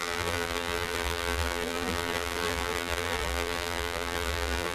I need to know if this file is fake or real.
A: fake